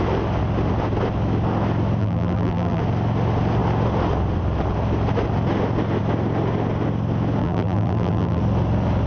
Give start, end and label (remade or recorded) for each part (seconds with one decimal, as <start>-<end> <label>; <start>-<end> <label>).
0.0-2.0 recorded; 2.0-2.8 remade; 2.8-7.4 recorded; 7.4-8.4 remade; 8.4-9.1 recorded